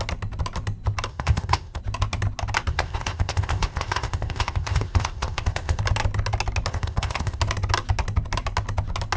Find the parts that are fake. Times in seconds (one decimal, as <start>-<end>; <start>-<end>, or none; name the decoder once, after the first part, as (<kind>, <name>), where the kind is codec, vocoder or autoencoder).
1.1-1.8 (codec, ZipCodec); 2.7-5.8; 6.7-7.4

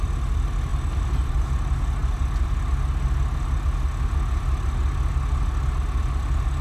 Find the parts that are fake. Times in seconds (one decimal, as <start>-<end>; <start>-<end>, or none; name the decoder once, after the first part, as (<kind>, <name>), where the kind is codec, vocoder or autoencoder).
0.7-1.4 (vocoder, BigVGAN v2)

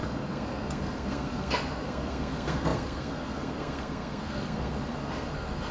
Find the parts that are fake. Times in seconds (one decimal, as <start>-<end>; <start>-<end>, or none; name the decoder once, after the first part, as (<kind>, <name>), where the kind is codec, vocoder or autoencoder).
0.0-5.7 (codec, SNAC)

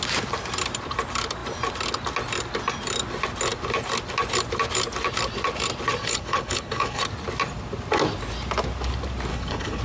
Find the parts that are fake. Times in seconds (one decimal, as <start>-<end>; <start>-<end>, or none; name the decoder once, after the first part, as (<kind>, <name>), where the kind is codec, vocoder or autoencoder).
6.0-7.0 (codec, HILCodec); 9.3-9.8

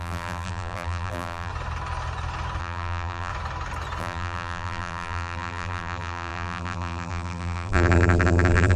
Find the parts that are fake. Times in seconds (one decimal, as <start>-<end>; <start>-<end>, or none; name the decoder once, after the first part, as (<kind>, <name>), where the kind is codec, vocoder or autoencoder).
0.0-1.5 (vocoder, BigVGAN v2); 2.6-3.3; 4.0-8.8